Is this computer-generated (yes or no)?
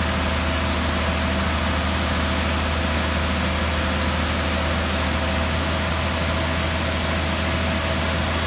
no